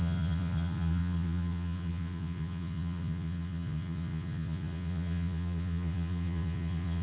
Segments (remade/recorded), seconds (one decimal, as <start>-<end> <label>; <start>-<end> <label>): 0.0-7.0 remade